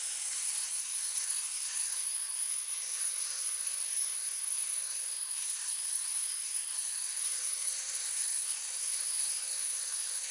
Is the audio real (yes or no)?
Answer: no